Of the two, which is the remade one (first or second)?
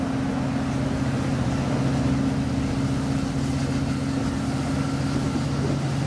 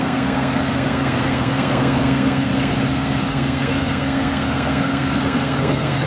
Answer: second